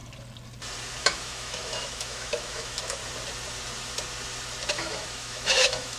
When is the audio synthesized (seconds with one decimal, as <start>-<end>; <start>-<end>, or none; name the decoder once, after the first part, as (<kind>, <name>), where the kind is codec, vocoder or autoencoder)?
1.0-3.0 (autoencoder, DAC-VAE); 4.7-6.0